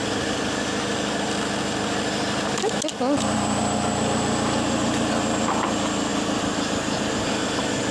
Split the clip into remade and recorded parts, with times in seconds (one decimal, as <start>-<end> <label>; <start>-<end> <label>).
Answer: 0.0-7.9 recorded